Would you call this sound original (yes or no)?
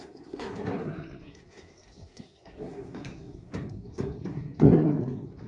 no